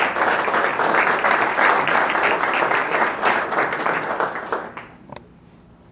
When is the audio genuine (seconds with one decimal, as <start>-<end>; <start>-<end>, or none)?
0.0-5.9

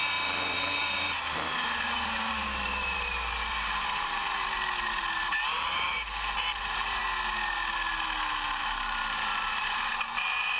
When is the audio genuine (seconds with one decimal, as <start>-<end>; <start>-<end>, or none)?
7.0-8.6

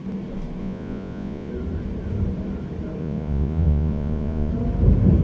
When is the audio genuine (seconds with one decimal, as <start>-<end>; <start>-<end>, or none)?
0.0-0.6; 1.5-3.0; 4.5-5.2

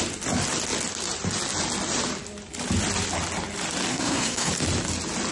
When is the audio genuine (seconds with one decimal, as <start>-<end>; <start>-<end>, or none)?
0.0-3.9; 4.5-5.3